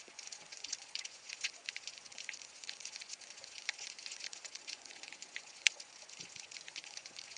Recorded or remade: remade